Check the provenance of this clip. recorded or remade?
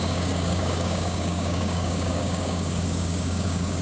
remade